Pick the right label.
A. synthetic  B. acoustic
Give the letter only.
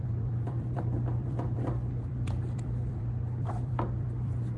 A